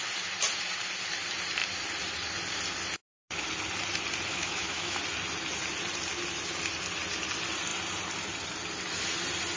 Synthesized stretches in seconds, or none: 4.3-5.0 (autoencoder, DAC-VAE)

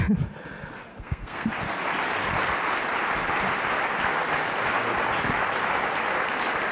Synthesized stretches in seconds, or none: 0.9-1.5 (codec, SNAC)

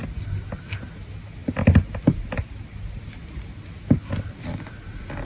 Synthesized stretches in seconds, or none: none

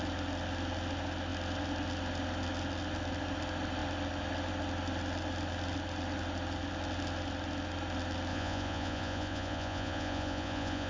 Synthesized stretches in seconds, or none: 8.3-10.9 (vocoder, Vocos)

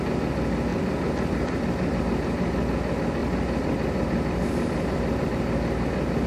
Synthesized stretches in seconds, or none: 0.7-2.0 (vocoder, BigVGAN v2); 3.2-5.3

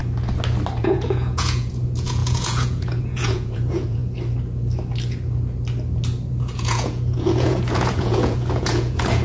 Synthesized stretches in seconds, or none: 0.8-4.0 (vocoder, Vocos); 6.3-9.2

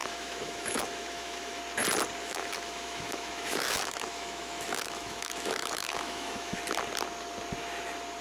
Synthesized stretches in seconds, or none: 0.0-1.6 (autoencoder, DAC-VAE); 2.2-6.6

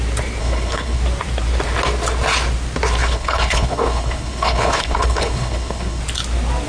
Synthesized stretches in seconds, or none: 0.4-1.0 (codec, HILCodec); 3.0-6.0